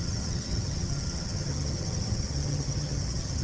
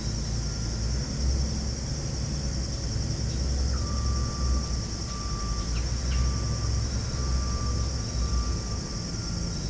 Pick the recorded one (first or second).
second